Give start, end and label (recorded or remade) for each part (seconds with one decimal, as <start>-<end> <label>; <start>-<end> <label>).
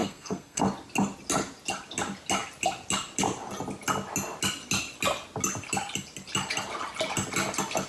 0.0-0.6 remade; 0.6-7.9 recorded